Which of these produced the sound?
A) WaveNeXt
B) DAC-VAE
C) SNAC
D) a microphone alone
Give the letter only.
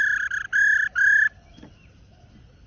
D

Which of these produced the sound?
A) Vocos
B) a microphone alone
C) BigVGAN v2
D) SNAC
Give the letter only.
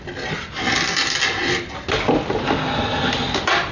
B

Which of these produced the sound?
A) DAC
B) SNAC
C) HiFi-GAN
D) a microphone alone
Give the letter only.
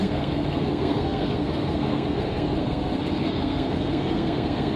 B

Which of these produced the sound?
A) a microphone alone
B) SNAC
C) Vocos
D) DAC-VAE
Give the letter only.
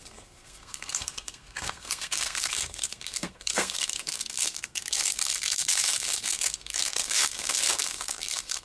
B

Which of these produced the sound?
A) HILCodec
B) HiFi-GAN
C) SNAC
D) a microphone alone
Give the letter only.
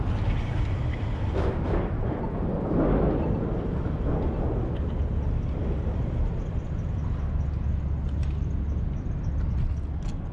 D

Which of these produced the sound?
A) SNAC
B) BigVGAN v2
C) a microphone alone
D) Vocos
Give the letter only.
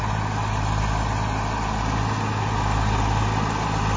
C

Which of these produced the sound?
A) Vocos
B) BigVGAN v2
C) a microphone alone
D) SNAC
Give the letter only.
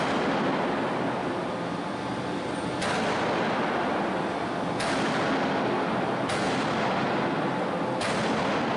C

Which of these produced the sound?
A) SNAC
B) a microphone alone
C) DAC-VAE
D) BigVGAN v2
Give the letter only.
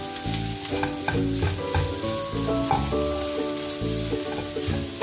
B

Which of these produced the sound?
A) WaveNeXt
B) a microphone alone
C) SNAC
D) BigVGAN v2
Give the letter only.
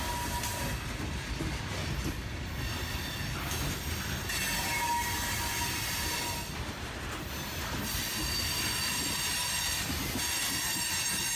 B